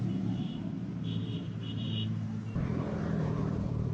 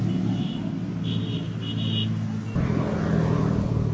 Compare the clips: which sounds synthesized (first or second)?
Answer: first